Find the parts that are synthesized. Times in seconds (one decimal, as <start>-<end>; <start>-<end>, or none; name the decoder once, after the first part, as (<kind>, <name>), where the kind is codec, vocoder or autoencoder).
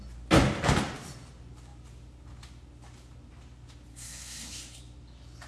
3.9-4.8 (codec, SNAC)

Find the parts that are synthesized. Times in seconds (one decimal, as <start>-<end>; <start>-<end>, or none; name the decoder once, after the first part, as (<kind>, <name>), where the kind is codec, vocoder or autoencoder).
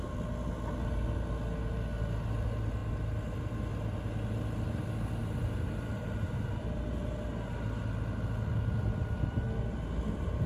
5.2-7.8 (vocoder, BigVGAN v2)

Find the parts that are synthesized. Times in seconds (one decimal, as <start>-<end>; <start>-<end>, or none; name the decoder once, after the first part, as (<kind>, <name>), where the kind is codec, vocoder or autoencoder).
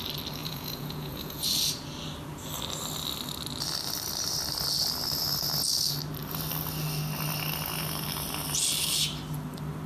0.4-1.4 (vocoder, Vocos)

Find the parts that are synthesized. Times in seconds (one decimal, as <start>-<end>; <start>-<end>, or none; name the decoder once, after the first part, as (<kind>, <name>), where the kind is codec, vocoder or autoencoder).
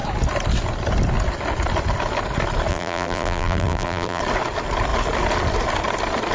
2.7-4.2 (vocoder, BigVGAN v2)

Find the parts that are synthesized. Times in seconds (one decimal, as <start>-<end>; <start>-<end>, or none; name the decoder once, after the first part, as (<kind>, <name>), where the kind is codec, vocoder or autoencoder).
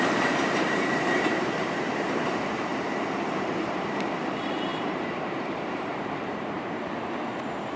0.0-2.7 (vocoder, BigVGAN v2); 3.5-7.8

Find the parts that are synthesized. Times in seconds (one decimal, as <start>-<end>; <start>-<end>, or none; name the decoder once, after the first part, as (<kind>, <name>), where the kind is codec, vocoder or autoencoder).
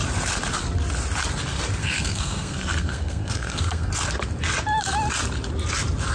1.8-3.9 (codec, SNAC)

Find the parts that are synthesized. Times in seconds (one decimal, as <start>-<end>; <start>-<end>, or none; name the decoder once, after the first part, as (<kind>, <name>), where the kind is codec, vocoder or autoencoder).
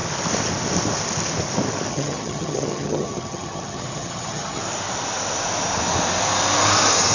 1.9-4.6 (vocoder, HiFi-GAN)